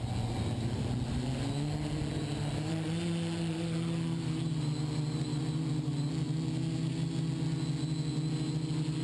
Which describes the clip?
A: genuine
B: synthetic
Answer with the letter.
A